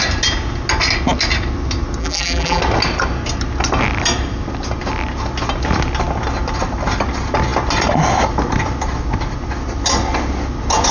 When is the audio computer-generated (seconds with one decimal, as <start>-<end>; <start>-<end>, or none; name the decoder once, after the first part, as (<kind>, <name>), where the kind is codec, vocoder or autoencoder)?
2.0-2.6 (vocoder, BigVGAN v2)